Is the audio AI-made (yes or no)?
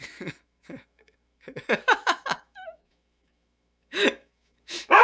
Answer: yes